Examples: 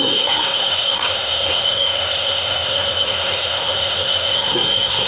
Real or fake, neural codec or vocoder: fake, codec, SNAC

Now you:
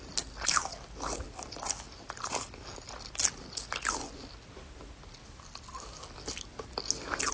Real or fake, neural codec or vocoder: real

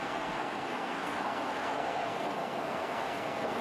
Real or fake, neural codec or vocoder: fake, codec, SNAC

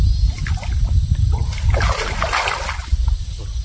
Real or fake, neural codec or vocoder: real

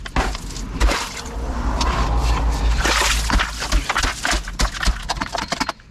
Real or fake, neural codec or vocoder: real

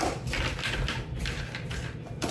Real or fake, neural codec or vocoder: real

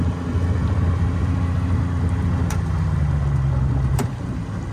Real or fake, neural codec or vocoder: real